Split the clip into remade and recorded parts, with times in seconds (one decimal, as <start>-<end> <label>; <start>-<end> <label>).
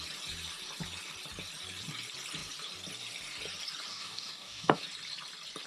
0.0-3.9 recorded; 3.9-4.8 remade; 4.8-5.7 recorded